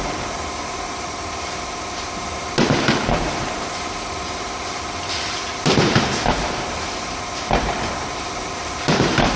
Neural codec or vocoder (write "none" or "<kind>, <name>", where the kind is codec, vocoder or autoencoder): vocoder, BigVGAN v2